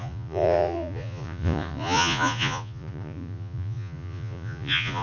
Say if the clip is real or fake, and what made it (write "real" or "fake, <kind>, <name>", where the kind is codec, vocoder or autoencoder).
fake, vocoder, Vocos